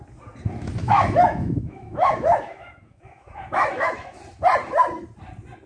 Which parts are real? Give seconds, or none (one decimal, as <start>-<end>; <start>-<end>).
0.0-0.8; 4.2-5.7